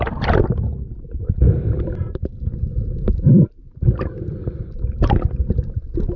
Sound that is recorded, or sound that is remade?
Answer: recorded